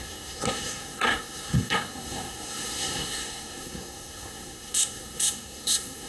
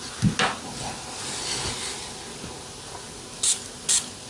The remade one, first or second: first